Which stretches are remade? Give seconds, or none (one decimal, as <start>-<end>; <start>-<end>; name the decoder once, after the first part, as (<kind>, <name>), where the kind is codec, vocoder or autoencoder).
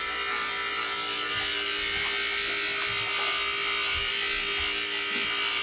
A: none